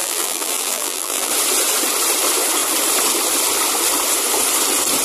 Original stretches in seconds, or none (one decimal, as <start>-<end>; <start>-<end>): 1.3-5.0